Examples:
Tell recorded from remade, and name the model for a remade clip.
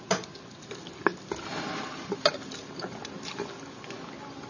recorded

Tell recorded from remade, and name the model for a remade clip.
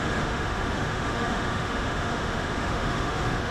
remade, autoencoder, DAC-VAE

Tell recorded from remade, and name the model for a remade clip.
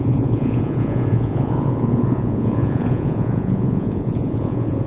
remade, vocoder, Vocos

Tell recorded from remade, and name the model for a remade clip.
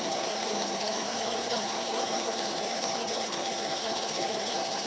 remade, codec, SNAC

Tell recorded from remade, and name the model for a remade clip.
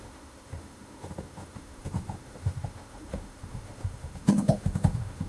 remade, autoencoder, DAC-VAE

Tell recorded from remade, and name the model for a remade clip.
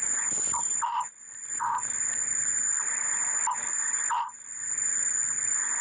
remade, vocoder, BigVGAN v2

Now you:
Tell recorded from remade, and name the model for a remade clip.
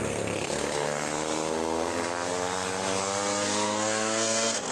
remade, codec, SNAC